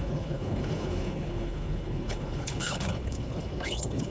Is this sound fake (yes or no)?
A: yes